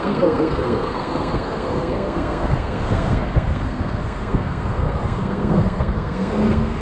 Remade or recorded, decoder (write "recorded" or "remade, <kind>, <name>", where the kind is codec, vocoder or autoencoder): remade, codec, SNAC